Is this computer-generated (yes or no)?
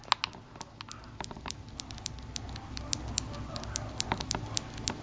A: no